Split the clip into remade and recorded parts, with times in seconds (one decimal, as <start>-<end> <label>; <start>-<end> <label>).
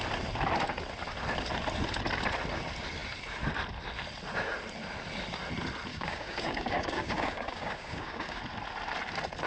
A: 0.0-5.9 recorded; 5.9-8.4 remade; 8.4-9.5 recorded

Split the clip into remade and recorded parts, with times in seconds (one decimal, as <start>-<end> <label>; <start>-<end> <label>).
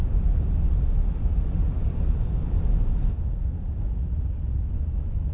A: 0.0-5.3 recorded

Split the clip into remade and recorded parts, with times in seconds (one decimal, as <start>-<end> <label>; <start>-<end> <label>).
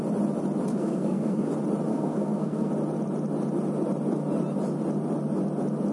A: 0.0-0.7 recorded; 0.7-1.5 remade; 1.5-1.9 recorded; 1.9-2.7 remade; 2.7-5.9 recorded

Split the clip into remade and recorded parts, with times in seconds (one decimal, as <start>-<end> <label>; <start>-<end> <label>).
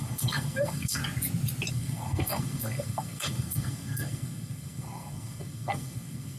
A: 0.0-1.0 remade; 1.0-1.7 recorded; 1.7-6.4 remade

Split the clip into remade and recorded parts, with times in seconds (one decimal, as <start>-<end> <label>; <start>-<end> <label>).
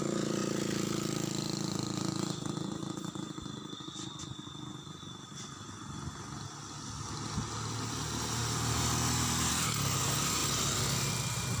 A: 0.0-11.6 recorded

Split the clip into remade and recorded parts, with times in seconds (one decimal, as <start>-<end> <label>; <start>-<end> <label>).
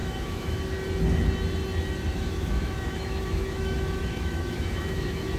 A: 0.0-0.6 remade; 0.6-2.1 recorded; 2.1-5.4 remade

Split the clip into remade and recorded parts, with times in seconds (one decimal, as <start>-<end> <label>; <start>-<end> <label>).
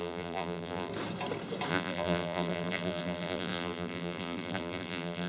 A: 0.0-0.9 remade; 0.9-1.7 recorded; 1.7-5.3 remade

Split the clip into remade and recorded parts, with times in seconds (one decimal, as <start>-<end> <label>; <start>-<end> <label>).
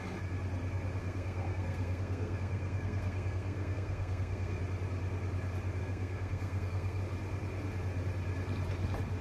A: 0.0-1.0 recorded; 1.0-4.6 remade; 4.6-5.8 recorded; 5.8-7.0 remade; 7.0-9.2 recorded